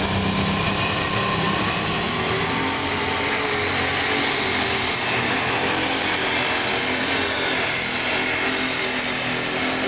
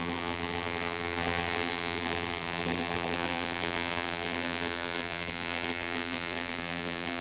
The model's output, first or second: second